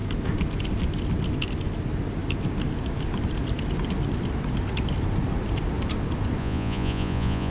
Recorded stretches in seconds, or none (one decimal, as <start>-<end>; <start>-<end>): 0.0-6.4